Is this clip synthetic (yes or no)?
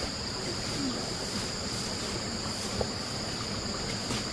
no